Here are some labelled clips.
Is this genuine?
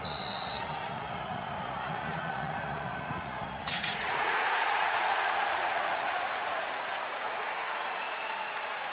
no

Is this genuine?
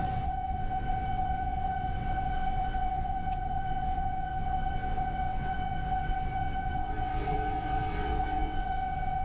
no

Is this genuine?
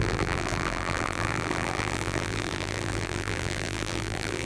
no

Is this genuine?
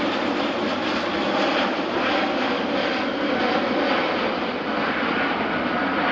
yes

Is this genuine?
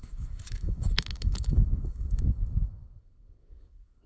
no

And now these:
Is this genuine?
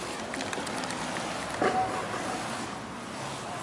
yes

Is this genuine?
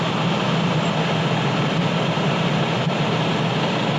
yes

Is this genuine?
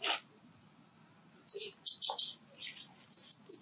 yes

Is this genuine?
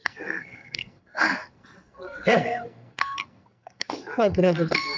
no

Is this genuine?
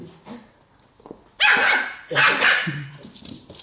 yes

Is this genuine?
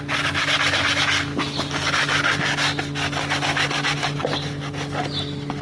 yes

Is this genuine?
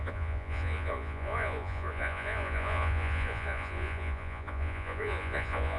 no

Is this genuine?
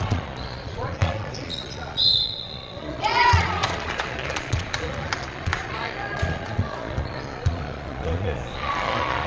no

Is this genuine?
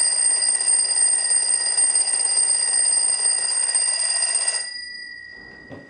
yes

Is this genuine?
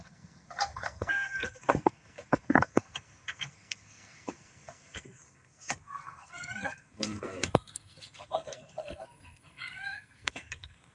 no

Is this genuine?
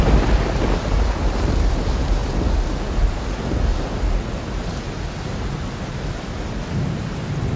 yes